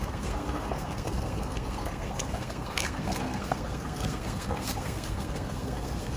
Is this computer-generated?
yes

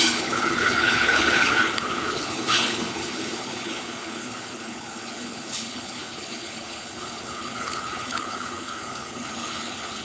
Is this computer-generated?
yes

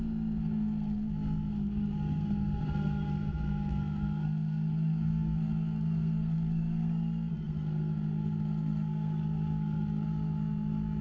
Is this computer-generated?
yes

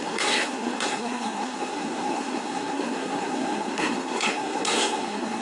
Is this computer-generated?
yes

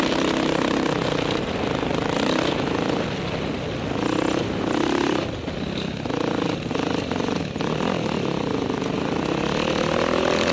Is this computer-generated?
no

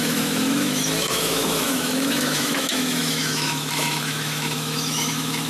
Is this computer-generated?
yes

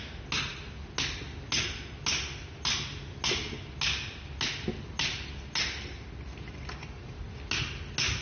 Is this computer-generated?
no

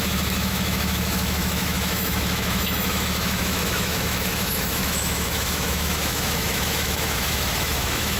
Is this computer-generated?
yes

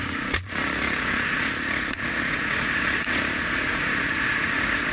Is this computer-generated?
yes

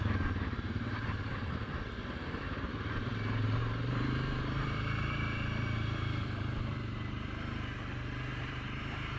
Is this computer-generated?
yes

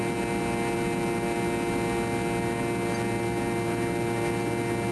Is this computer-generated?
no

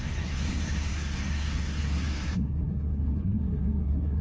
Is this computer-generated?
yes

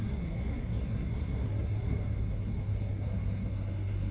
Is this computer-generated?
yes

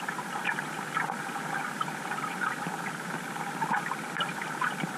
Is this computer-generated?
no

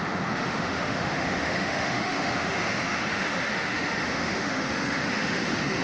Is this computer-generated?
yes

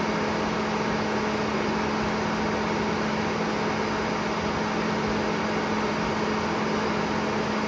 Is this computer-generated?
no